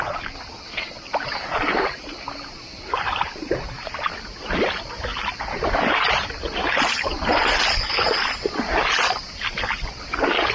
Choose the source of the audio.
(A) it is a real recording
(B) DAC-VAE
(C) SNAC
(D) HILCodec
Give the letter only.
A